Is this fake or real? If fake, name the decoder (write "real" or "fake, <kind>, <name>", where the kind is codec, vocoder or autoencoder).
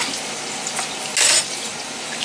real